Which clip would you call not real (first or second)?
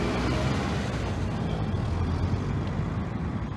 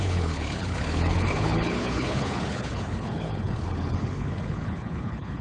second